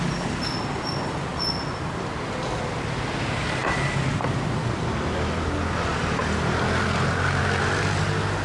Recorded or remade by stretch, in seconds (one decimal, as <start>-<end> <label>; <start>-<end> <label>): 0.0-8.4 recorded